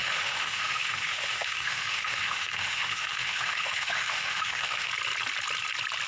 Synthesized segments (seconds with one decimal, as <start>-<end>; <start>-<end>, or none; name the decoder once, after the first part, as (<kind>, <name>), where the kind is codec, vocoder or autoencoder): 0.0-4.9 (autoencoder, DAC-VAE)